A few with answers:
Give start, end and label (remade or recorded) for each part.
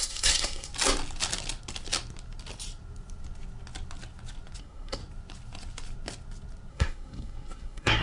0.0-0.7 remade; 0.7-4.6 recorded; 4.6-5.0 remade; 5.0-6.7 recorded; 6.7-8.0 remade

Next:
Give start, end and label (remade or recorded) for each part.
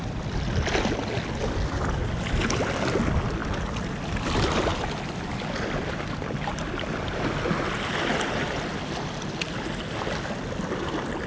0.0-11.3 recorded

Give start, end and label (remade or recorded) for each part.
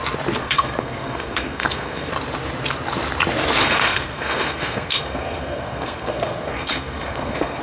0.0-0.4 recorded; 0.4-2.1 remade; 2.1-3.6 recorded; 3.6-7.6 remade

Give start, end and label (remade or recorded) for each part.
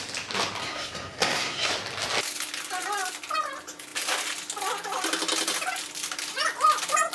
0.0-0.6 recorded; 0.6-1.7 remade; 1.7-7.1 recorded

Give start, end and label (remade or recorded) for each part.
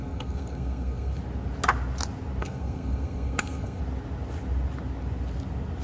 0.0-1.2 remade; 1.2-2.4 recorded; 2.4-3.8 remade; 3.8-5.8 recorded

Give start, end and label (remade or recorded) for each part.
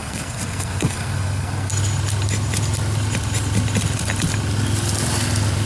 0.0-1.7 remade; 1.7-5.7 recorded